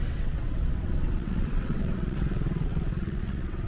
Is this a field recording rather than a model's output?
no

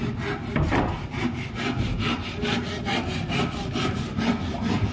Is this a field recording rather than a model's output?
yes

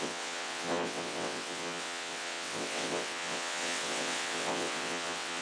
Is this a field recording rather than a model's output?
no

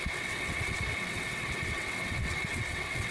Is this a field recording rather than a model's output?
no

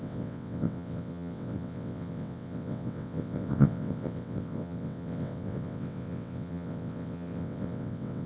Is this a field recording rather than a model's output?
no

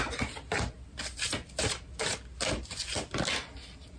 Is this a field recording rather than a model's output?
yes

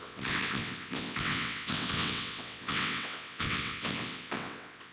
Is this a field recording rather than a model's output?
no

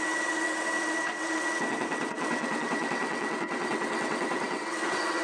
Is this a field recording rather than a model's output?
no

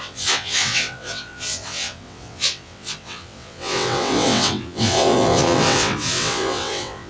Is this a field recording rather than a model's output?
no